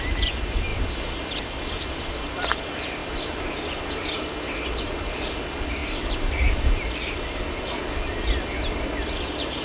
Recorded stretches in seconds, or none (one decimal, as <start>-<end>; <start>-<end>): 0.0-9.6